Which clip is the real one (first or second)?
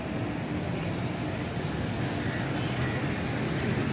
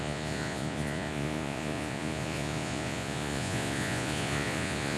first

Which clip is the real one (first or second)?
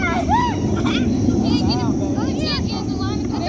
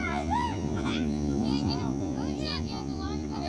first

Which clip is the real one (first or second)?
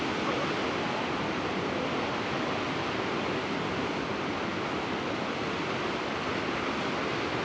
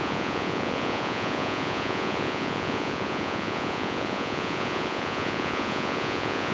first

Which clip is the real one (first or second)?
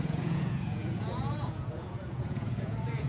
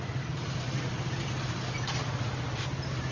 second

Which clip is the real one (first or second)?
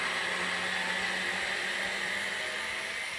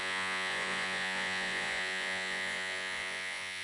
first